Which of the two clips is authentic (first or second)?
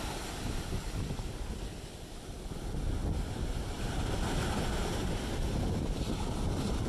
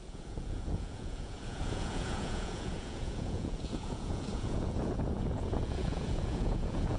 first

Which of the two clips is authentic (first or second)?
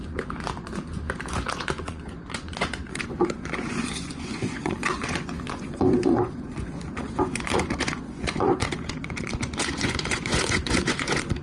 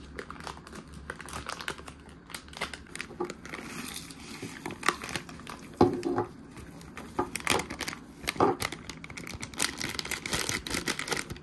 second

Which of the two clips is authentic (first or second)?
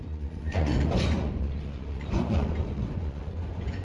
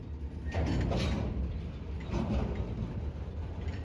second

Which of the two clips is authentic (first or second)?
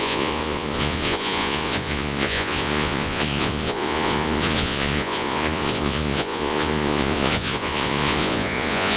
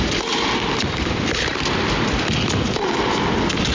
second